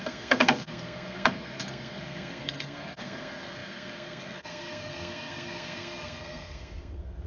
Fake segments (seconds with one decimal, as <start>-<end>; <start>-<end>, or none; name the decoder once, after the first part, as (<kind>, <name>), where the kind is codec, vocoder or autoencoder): 0.0-7.3 (codec, SNAC)